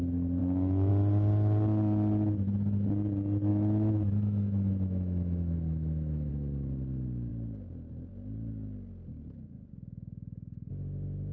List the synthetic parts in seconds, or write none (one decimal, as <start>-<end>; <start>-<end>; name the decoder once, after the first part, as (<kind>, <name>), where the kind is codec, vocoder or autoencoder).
0.4-0.9 (autoencoder, DAC-VAE); 3.5-6.3